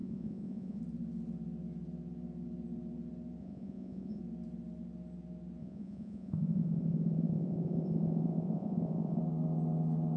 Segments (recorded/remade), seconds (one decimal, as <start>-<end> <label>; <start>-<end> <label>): 0.0-0.8 remade; 0.8-3.4 recorded; 3.4-4.2 remade; 4.2-5.6 recorded; 5.6-9.2 remade; 9.2-10.2 recorded